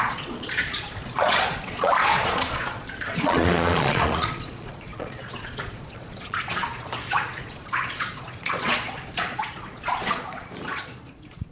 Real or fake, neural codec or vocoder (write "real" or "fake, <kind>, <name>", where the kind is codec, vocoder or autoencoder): fake, vocoder, Vocos